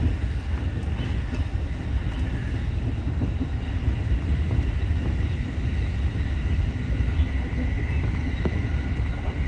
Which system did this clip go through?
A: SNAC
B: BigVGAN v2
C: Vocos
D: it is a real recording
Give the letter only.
D